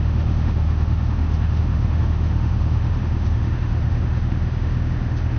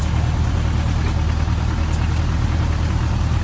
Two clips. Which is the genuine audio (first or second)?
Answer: second